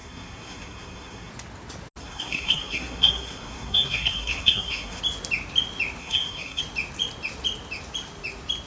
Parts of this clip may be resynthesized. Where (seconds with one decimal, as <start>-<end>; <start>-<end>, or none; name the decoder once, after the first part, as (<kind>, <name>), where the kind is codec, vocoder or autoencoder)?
0.0-1.3 (codec, SNAC); 2.0-5.0; 6.0-6.6